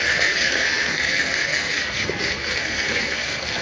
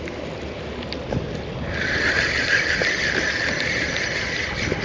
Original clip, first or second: second